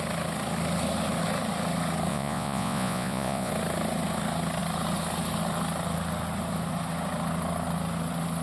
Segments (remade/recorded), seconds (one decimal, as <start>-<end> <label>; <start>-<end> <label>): 0.0-2.1 recorded; 2.1-3.5 remade; 3.5-8.4 recorded

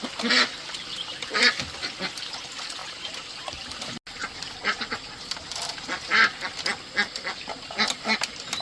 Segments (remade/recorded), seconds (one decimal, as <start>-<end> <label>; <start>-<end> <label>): 0.0-8.6 recorded